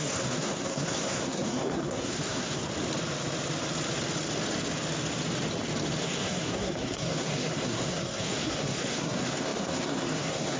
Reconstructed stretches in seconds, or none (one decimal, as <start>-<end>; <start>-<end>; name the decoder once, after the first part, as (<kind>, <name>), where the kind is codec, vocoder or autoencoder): 0.0-2.6 (codec, SNAC); 6.0-10.6